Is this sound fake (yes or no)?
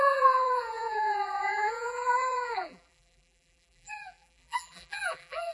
yes